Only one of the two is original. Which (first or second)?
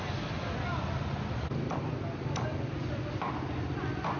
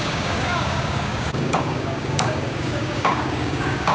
first